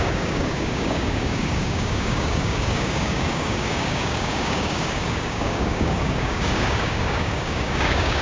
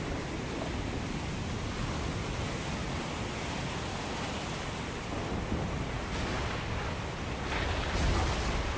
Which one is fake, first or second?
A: first